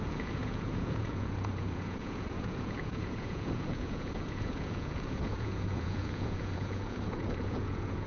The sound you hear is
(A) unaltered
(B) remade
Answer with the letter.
B